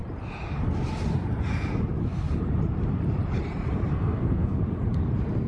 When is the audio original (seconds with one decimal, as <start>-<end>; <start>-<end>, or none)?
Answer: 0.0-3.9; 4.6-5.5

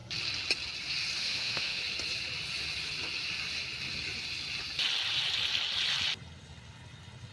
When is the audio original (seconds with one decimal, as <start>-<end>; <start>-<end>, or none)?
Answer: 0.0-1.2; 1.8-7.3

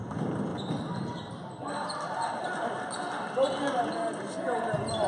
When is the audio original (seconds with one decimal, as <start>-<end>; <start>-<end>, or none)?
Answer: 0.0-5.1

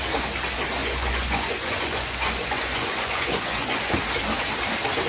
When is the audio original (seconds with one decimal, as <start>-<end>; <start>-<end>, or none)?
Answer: 0.0-0.8; 3.9-5.1